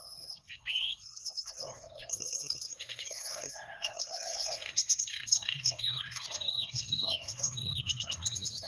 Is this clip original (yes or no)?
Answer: no